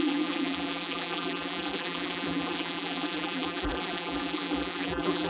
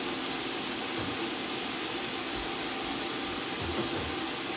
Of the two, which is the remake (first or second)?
first